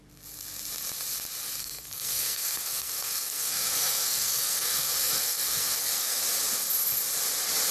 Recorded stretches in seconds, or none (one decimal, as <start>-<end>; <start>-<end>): 0.0-1.6; 6.2-7.7

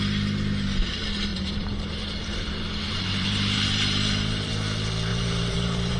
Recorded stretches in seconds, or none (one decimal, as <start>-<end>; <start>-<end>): 0.0-1.3; 4.5-5.1

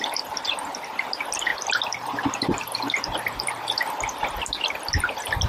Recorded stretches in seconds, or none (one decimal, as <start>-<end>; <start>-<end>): 0.0-1.5; 4.8-5.5

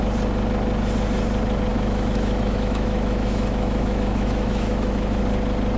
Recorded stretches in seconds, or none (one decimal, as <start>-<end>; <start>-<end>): 0.0-1.7; 5.2-5.8

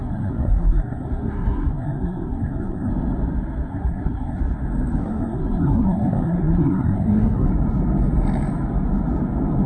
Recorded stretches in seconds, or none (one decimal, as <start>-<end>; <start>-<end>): 2.9-3.7; 4.4-5.0; 7.5-9.7

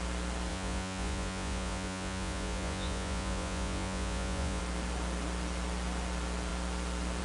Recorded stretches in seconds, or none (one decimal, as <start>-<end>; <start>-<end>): 0.0-0.5; 4.6-7.2

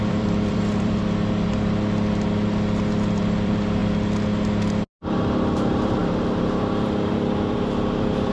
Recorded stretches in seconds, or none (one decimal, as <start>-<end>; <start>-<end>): 1.0-2.9; 3.8-5.0